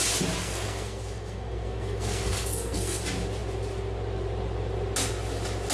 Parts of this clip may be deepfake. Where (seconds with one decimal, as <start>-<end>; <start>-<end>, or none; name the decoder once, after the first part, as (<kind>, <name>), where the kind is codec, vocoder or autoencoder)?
0.4-3.0 (codec, SNAC)